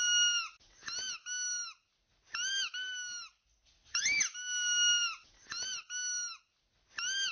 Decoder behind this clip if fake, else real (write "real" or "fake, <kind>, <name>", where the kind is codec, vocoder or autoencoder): real